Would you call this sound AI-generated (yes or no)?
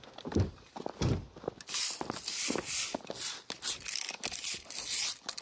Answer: no